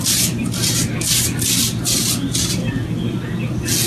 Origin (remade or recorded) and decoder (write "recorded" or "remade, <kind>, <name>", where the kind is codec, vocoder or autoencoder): recorded